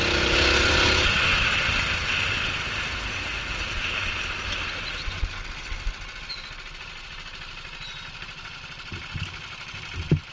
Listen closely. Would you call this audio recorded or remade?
recorded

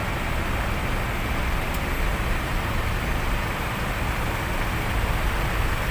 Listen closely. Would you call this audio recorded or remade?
recorded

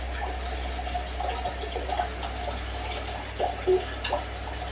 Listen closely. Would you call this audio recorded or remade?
recorded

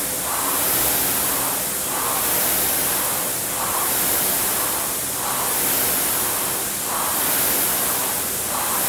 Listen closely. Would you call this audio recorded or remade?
recorded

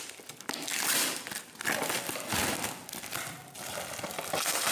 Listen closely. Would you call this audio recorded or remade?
recorded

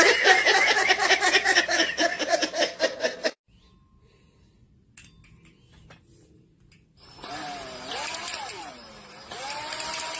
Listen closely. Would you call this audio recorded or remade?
recorded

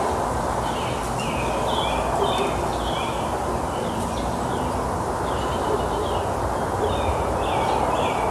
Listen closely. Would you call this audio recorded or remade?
recorded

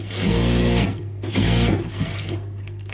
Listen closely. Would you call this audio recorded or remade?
remade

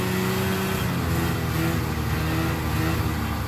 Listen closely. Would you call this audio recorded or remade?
recorded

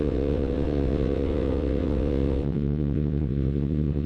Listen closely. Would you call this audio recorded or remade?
remade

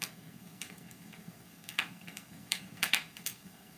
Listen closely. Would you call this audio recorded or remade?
remade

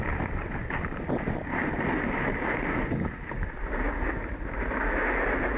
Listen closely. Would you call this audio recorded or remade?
recorded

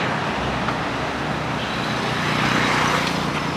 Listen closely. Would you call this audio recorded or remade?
recorded